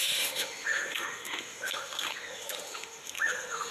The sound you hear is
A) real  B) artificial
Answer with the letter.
B